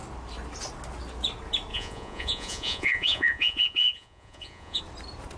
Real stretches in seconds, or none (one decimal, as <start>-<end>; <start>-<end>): 0.0-1.7; 4.8-5.4